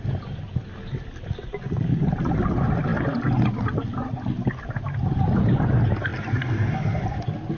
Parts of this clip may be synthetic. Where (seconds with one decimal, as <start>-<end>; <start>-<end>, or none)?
none

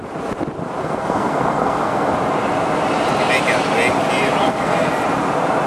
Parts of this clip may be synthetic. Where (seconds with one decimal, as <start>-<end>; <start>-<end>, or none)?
0.8-2.1; 4.4-4.9

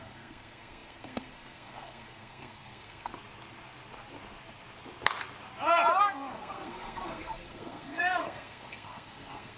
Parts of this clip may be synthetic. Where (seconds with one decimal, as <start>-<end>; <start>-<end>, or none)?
0.0-3.1; 6.0-9.6

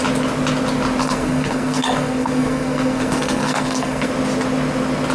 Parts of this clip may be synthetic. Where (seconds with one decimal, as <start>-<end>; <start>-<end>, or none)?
1.0-4.1